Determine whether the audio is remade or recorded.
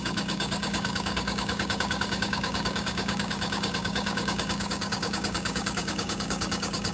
remade